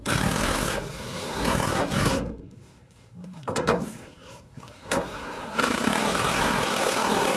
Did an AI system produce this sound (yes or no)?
yes